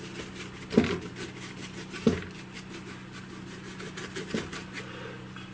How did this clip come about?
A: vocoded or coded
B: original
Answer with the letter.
B